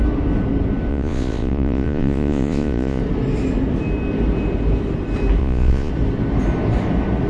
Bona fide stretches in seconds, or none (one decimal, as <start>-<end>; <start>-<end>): 0.0-0.9; 3.0-5.4; 5.9-7.3